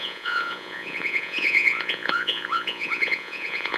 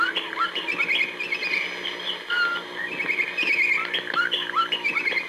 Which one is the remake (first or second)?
first